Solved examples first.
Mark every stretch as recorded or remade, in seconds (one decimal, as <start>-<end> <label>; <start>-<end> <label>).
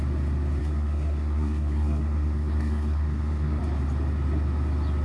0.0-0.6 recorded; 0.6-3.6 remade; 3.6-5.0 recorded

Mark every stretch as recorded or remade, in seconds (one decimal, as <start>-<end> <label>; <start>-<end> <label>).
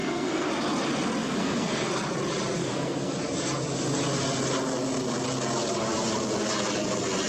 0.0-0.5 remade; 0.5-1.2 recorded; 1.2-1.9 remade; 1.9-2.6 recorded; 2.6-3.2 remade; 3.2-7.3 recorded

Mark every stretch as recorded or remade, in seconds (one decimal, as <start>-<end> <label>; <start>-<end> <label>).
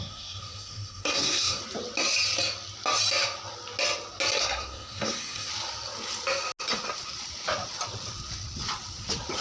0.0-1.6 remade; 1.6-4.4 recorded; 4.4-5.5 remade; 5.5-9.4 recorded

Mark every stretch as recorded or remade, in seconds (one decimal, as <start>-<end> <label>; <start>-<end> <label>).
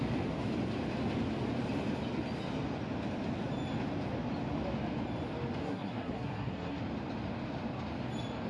0.0-5.6 recorded; 5.6-6.8 remade; 6.8-8.5 recorded